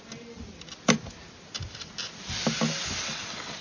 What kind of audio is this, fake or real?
real